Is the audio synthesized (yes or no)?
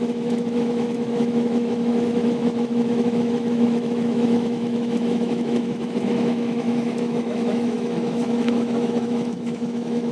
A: yes